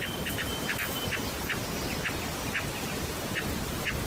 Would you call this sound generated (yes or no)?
no